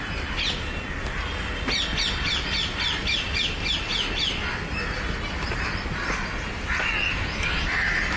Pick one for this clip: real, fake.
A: real